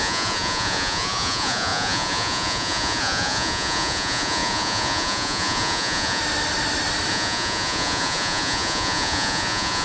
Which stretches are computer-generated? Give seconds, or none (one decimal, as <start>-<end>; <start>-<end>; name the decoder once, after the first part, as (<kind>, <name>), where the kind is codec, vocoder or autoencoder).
0.0-6.2 (vocoder, Vocos); 7.1-9.8